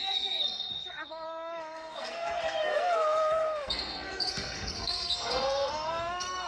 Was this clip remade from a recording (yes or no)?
yes